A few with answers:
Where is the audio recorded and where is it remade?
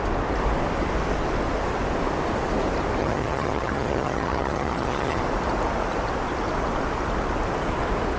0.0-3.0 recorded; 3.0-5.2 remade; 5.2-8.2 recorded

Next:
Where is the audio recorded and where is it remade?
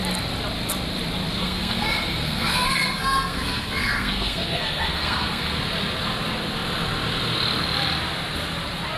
0.0-1.4 recorded; 1.4-5.6 remade; 5.6-9.0 recorded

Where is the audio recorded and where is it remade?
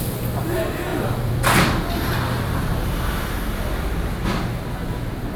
0.0-0.9 recorded; 0.9-4.1 remade; 4.1-5.4 recorded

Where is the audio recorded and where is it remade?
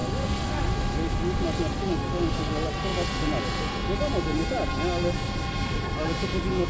0.0-6.7 recorded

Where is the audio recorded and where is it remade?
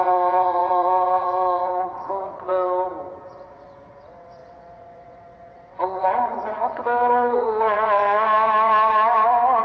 0.0-2.5 remade; 2.5-3.3 recorded; 3.3-9.6 remade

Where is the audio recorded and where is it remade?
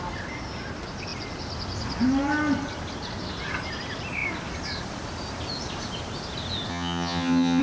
0.0-6.7 recorded; 6.7-7.6 remade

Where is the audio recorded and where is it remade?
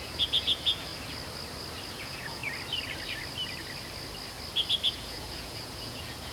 0.0-0.9 remade; 0.9-1.9 recorded; 1.9-2.4 remade; 2.4-4.9 recorded; 4.9-6.3 remade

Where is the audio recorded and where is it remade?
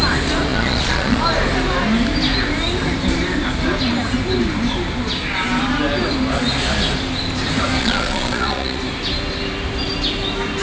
0.0-0.5 recorded; 0.5-1.2 remade; 1.2-7.8 recorded; 7.8-8.8 remade; 8.8-10.6 recorded